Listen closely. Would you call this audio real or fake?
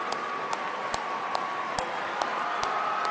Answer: real